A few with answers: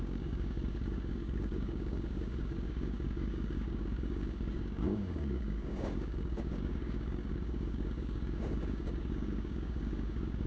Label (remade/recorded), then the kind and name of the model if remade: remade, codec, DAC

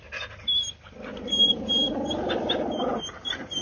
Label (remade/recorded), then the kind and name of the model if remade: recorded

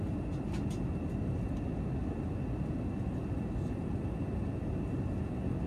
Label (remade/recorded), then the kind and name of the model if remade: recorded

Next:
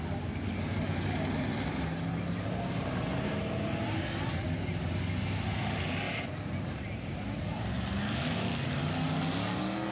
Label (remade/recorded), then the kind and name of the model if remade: recorded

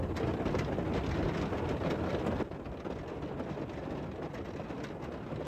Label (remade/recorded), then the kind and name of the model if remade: recorded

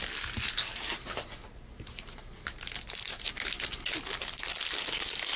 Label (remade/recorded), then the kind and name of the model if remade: recorded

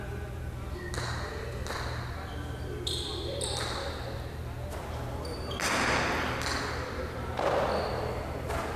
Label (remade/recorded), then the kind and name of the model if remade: recorded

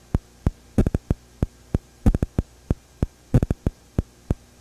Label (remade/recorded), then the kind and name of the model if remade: remade, vocoder, BigVGAN v2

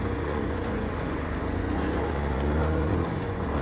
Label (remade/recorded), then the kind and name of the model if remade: remade, vocoder, Vocos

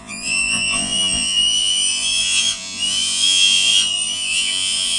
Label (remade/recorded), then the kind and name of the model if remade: remade, vocoder, Vocos